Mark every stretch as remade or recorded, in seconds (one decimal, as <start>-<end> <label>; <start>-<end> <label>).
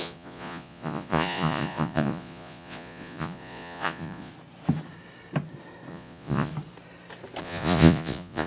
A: 0.0-4.3 remade; 4.3-5.9 recorded; 5.9-6.5 remade; 6.5-7.4 recorded; 7.4-8.5 remade